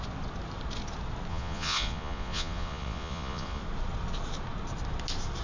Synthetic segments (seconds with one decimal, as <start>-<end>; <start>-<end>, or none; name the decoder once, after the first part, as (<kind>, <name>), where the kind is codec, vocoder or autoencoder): 1.3-3.6 (vocoder, Vocos)